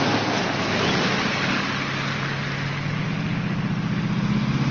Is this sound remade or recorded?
recorded